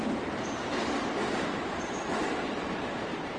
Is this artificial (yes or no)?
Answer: yes